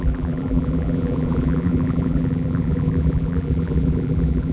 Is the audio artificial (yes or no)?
yes